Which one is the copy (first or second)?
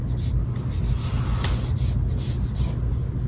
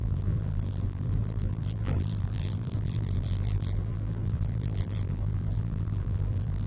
second